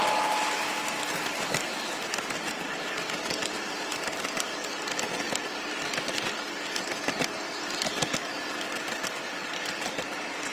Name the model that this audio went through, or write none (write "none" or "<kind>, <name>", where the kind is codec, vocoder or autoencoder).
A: none